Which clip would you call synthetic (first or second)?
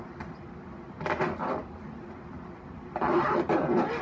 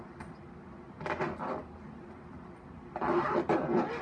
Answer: first